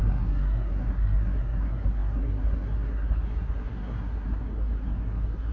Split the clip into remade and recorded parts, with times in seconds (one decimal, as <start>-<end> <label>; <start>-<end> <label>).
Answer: 0.0-5.5 remade